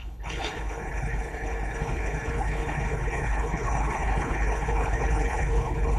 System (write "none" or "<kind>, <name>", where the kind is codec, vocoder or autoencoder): codec, HILCodec